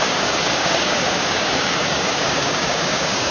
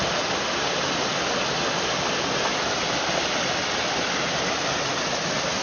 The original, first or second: second